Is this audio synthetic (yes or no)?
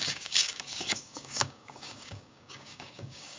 yes